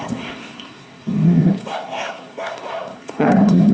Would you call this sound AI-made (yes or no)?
yes